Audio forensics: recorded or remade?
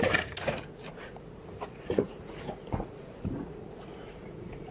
remade